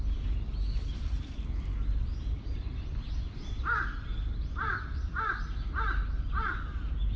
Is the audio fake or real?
real